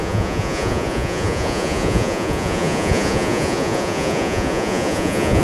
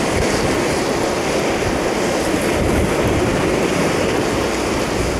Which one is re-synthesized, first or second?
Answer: first